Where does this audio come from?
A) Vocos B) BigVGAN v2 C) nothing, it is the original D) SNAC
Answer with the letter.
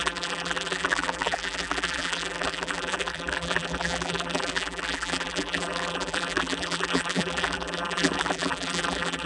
B